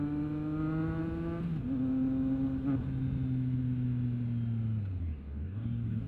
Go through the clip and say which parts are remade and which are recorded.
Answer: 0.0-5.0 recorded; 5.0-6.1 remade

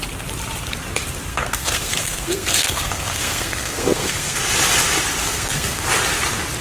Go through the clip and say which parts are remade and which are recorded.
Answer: 0.0-1.3 recorded; 1.3-4.4 remade; 4.4-5.2 recorded; 5.2-5.9 remade; 5.9-6.6 recorded